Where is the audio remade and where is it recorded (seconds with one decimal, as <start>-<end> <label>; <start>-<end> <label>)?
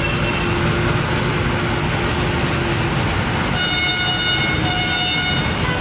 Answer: 0.0-5.8 recorded